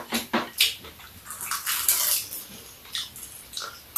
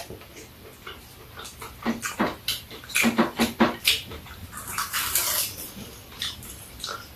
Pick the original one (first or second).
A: first